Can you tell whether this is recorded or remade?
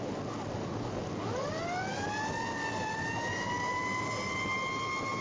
recorded